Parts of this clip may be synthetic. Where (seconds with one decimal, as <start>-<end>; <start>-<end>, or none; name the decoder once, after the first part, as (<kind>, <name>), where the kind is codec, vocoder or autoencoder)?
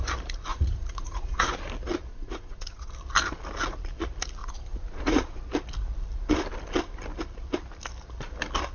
0.5-1.6 (vocoder, Vocos); 2.1-2.9; 4.4-5.4